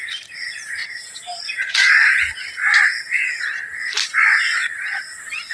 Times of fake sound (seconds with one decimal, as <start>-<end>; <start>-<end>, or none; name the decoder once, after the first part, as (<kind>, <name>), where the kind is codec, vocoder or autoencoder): 0.0-5.5 (vocoder, BigVGAN v2)

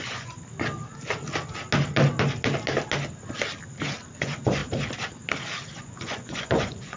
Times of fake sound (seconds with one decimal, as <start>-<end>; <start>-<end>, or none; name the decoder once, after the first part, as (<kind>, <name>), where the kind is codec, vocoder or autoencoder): 0.0-0.4 (vocoder, Vocos); 4.1-4.6; 5.8-7.0

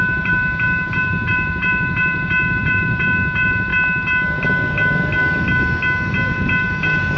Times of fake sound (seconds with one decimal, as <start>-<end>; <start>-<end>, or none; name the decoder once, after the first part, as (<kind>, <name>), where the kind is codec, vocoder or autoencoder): 0.0-3.7 (vocoder, Vocos); 6.1-7.2

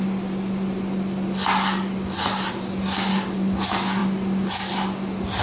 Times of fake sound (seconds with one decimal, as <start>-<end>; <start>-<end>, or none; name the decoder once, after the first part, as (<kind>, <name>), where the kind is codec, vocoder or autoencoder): none

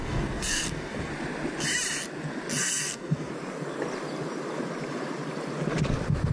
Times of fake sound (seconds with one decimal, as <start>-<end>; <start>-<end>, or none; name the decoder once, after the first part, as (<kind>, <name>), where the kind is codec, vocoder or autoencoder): 0.0-1.1 (codec, SNAC); 2.6-3.3

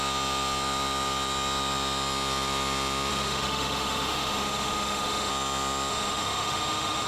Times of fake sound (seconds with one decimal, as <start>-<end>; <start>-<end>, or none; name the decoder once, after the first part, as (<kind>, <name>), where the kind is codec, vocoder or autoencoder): 3.1-5.3 (autoencoder, DAC-VAE); 5.9-7.1

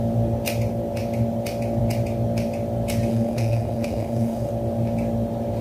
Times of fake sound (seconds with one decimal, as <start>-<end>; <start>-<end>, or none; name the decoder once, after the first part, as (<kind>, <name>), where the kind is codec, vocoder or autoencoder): 3.1-4.5 (autoencoder, DAC-VAE)